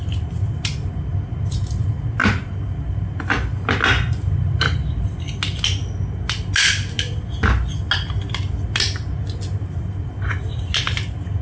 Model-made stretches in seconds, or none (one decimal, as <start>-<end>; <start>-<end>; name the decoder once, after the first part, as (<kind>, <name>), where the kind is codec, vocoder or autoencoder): none

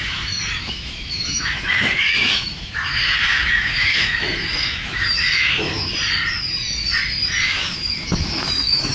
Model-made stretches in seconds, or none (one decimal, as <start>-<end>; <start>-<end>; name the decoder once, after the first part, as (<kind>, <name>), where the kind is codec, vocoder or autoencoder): 0.0-5.9 (autoencoder, DAC-VAE); 7.4-8.9

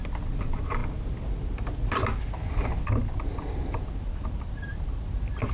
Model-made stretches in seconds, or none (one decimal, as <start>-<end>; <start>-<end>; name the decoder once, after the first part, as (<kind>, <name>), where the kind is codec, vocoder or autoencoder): none

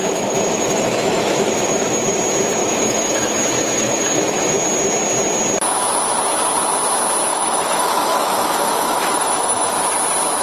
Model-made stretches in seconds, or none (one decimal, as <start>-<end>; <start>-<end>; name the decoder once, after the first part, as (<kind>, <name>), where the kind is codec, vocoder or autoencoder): 0.0-2.2 (autoencoder, DAC-VAE); 2.6-4.6; 7.3-9.7

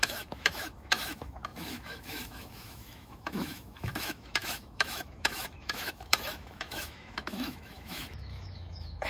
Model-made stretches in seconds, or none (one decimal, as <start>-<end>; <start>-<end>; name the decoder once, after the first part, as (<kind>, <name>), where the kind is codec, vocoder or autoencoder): 0.0-9.1 (autoencoder, DAC-VAE)

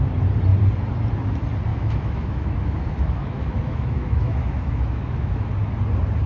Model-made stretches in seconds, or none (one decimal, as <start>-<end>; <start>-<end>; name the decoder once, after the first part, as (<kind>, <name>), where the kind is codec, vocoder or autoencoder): 1.7-5.5 (autoencoder, DAC-VAE)